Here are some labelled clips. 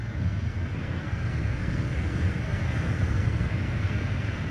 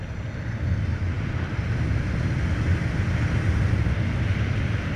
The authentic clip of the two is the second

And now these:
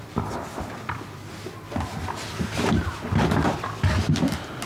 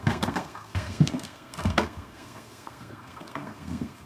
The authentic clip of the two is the first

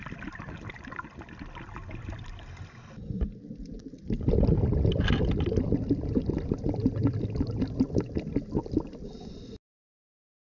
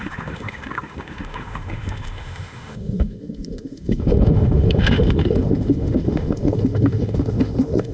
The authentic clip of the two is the first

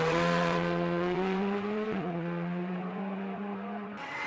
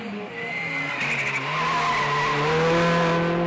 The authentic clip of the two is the second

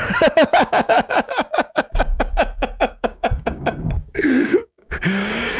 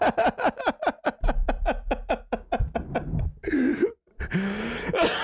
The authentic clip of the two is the second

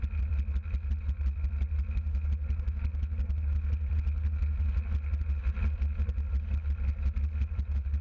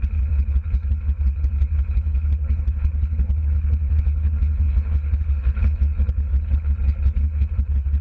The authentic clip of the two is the first